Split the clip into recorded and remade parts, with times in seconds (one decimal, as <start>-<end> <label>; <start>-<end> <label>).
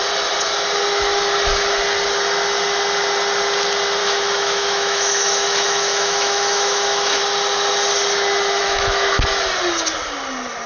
0.0-4.0 recorded; 4.0-7.2 remade; 7.2-8.6 recorded; 8.6-9.1 remade; 9.1-10.7 recorded